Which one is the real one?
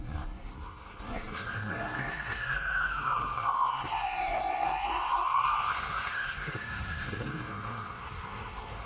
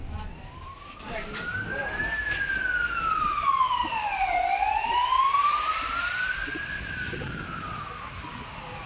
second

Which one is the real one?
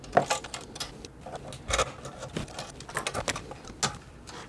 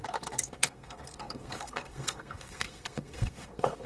first